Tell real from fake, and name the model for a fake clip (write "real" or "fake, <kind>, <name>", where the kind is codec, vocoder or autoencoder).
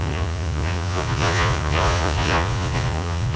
fake, vocoder, Vocos